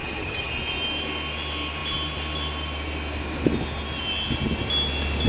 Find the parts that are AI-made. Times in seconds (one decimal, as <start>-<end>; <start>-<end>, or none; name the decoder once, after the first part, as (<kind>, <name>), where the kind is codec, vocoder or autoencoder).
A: 0.0-0.5 (vocoder, HiFi-GAN)